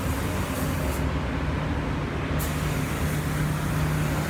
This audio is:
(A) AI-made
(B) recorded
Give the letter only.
B